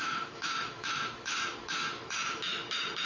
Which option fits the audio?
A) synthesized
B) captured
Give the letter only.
A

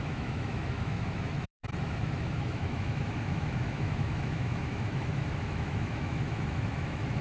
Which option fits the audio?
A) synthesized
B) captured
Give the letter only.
A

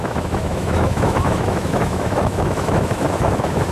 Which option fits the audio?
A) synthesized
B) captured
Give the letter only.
A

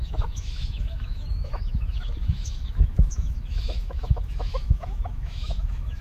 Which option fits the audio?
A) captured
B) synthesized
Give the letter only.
B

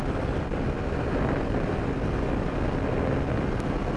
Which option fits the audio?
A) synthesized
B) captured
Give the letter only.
B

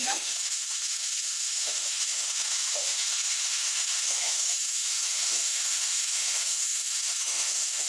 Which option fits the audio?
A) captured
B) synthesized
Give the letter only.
B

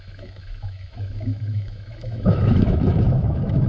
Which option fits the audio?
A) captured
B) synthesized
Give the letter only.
B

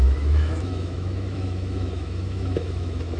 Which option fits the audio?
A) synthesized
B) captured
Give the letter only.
A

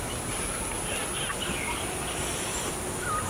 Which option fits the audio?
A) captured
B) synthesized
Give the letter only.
A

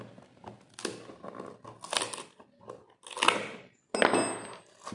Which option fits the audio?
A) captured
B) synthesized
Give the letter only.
A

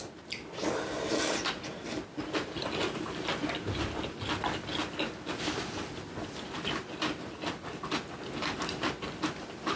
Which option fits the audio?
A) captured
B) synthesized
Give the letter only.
A